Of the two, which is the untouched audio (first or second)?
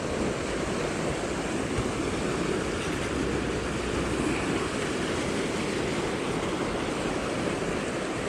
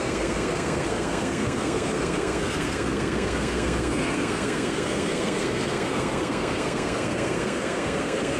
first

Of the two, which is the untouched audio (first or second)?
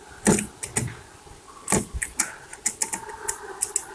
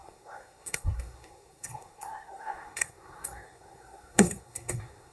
first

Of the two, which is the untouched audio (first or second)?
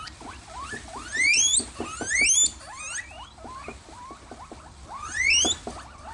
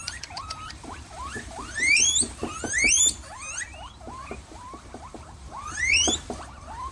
first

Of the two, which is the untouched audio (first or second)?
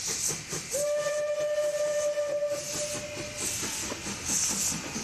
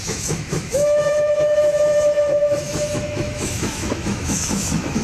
first